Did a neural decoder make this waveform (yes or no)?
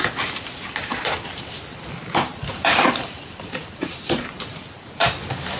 yes